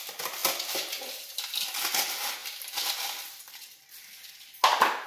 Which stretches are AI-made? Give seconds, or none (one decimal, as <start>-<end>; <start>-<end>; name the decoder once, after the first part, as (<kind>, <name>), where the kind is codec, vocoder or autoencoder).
none